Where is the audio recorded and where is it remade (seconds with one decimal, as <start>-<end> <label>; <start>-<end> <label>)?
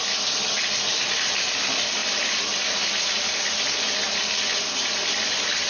0.0-5.7 recorded